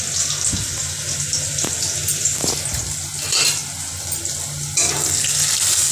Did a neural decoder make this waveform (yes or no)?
no